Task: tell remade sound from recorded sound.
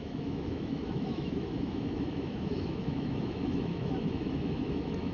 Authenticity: remade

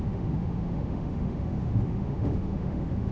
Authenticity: remade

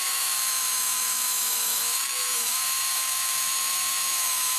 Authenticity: remade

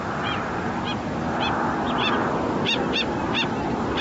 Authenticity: recorded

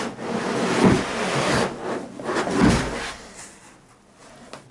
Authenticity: recorded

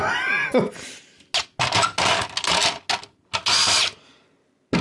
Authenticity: recorded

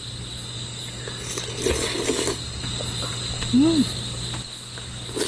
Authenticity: recorded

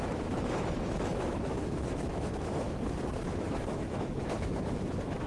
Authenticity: remade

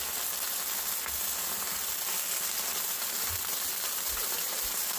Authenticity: recorded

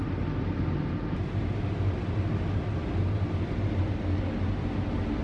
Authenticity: recorded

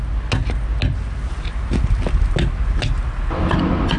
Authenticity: recorded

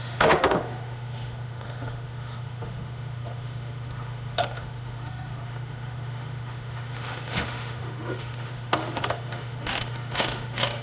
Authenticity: remade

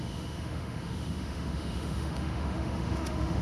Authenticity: remade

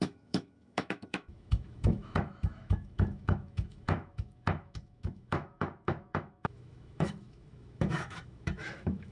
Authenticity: remade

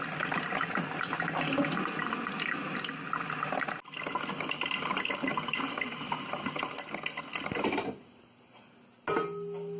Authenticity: recorded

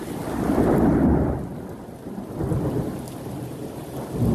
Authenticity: recorded